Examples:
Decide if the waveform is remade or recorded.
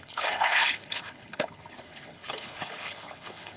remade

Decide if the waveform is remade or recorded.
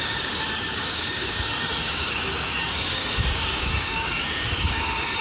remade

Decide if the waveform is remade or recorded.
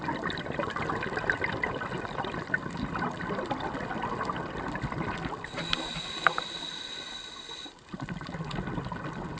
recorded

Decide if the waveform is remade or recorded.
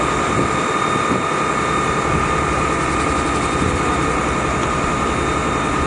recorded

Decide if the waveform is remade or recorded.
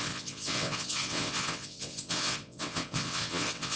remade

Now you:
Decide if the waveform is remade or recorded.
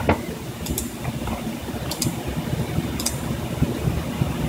recorded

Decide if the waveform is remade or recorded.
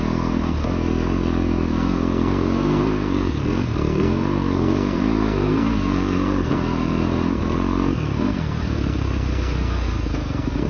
remade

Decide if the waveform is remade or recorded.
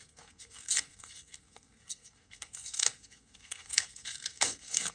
remade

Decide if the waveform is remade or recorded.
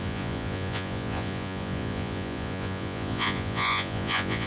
remade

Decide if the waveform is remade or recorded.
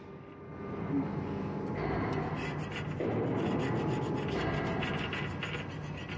recorded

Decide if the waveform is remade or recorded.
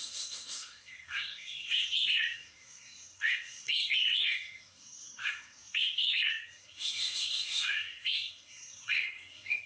remade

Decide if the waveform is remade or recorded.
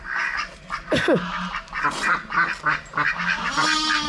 recorded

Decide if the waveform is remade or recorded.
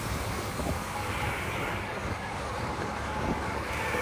remade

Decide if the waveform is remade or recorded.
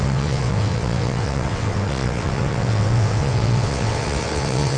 remade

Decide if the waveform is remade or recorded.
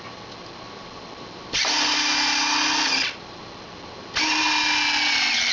recorded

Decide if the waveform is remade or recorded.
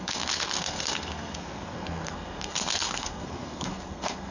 remade